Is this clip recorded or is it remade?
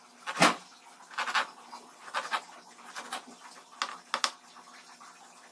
recorded